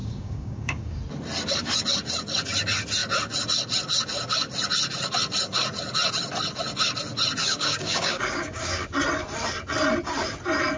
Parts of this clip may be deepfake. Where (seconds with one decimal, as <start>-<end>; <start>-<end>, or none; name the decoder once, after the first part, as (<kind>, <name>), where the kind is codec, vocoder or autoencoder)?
0.0-1.0 (codec, DAC); 7.4-8.9